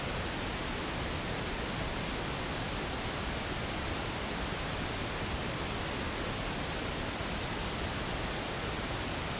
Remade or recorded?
recorded